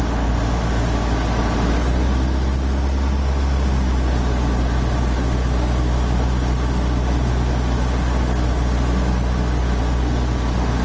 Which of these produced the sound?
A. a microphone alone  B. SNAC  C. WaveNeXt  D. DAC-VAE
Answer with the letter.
A